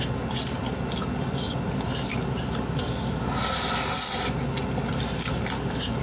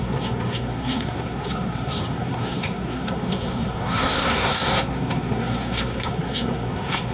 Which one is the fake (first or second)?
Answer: second